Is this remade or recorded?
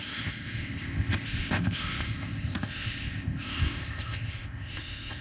remade